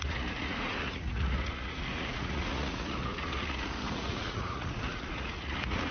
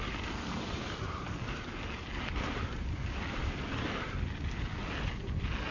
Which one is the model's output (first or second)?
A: first